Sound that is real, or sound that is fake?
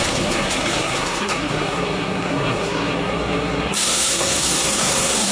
fake